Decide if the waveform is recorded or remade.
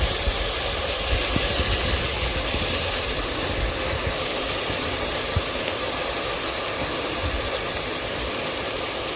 recorded